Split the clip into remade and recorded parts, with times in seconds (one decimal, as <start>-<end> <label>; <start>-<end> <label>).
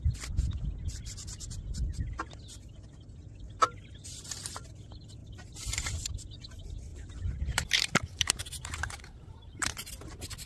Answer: 0.0-5.2 recorded; 5.2-6.1 remade; 6.1-6.9 recorded; 6.9-9.9 remade; 9.9-10.5 recorded